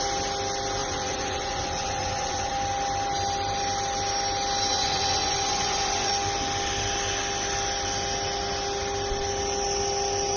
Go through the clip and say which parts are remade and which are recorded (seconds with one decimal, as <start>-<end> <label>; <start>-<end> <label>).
0.0-0.8 recorded; 0.8-2.5 remade; 2.5-4.7 recorded; 4.7-6.1 remade; 6.1-10.4 recorded